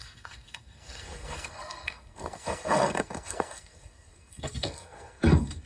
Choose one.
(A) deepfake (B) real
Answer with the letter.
A